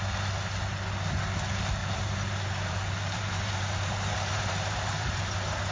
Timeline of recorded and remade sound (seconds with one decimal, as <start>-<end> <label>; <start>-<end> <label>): 0.0-1.8 recorded; 1.8-5.2 remade; 5.2-5.7 recorded